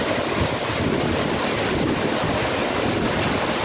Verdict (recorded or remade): recorded